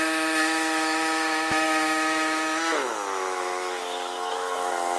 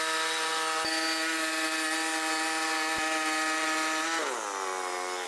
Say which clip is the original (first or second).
second